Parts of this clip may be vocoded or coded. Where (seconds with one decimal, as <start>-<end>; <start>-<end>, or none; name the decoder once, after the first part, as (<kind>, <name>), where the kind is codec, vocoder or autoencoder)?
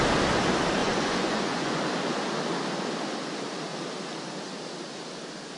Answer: 0.8-1.8 (vocoder, Vocos)